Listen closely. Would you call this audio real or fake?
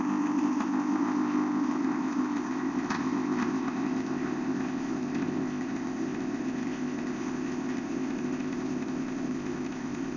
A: fake